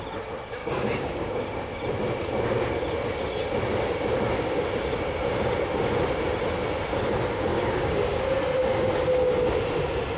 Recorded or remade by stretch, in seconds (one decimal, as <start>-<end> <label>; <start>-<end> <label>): 0.0-0.6 recorded; 0.6-1.7 remade; 1.7-7.5 recorded; 7.5-8.2 remade; 8.2-10.2 recorded